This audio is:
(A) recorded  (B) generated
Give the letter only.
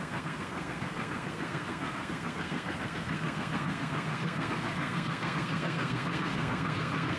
B